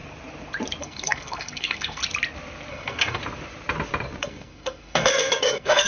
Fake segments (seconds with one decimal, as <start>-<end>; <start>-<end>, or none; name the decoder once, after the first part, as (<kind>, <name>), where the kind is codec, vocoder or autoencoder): 0.8-2.0 (codec, SNAC); 2.7-3.2; 4.2-5.9